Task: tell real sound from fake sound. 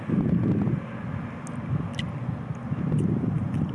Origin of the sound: real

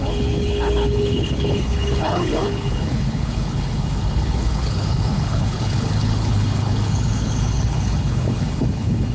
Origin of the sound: fake